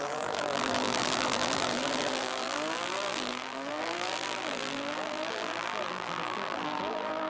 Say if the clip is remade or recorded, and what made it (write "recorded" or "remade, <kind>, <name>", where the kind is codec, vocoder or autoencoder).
remade, vocoder, BigVGAN v2